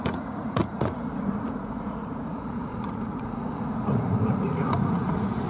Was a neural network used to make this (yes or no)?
yes